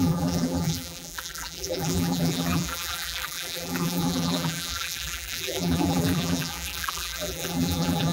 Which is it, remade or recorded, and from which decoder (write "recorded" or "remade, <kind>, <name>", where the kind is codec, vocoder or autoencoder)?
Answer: remade, vocoder, BigVGAN v2